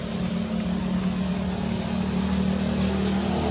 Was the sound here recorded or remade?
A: recorded